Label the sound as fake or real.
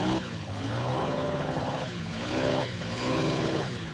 fake